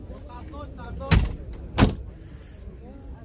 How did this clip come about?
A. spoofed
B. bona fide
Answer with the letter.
B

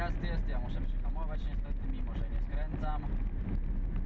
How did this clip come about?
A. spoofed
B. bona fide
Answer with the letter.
B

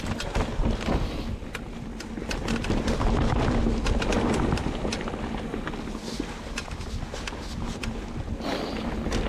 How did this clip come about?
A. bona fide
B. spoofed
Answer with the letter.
A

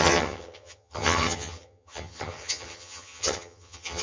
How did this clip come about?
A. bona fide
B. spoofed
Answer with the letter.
B